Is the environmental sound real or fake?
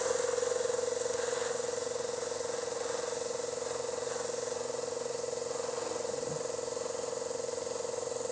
real